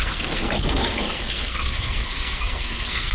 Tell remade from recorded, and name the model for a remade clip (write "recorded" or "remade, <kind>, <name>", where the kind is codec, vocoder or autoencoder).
remade, codec, SNAC